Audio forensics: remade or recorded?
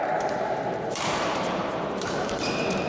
remade